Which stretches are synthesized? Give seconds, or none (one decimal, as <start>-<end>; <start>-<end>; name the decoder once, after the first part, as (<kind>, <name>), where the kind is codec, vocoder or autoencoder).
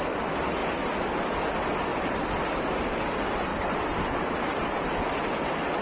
1.9-2.7 (vocoder, BigVGAN v2); 3.5-5.1